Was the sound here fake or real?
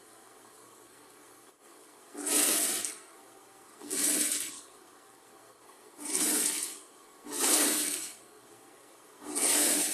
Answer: fake